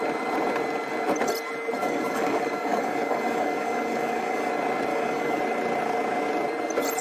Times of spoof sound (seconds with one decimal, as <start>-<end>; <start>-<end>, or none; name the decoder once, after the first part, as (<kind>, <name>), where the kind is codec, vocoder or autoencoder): 1.8-4.5 (codec, DAC); 4.9-5.4